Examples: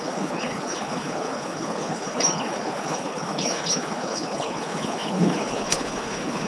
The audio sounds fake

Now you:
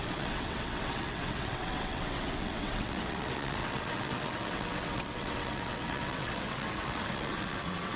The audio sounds fake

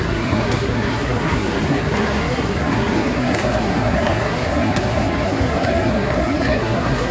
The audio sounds fake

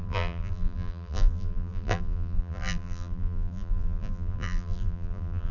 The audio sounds fake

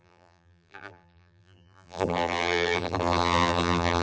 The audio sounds fake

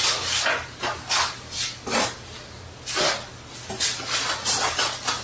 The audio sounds real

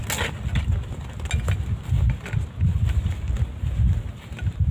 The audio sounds real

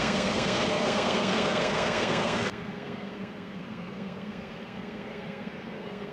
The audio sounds fake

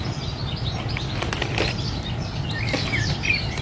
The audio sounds real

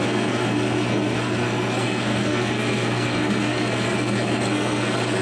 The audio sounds fake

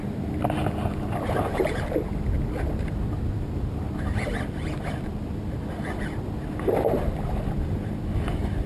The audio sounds real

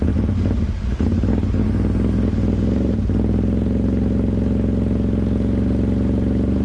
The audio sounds real